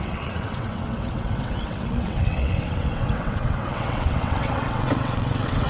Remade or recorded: remade